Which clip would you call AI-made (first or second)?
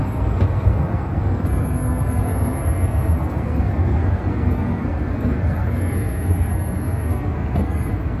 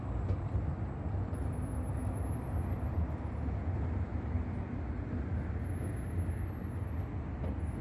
first